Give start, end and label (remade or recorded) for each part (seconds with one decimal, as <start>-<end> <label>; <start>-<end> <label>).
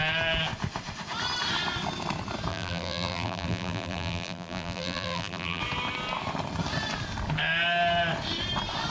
0.0-2.5 recorded; 2.5-5.6 remade; 5.6-8.9 recorded